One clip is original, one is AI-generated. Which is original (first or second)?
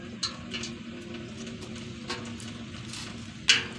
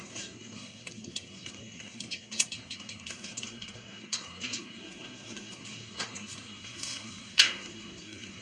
first